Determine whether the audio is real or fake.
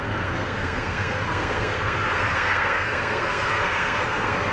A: fake